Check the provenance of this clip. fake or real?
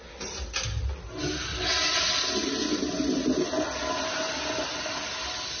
real